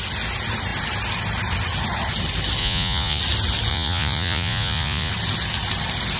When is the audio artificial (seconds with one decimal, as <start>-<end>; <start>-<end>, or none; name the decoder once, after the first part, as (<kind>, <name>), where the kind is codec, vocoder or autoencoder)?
2.6-3.2 (vocoder, Vocos); 3.7-5.1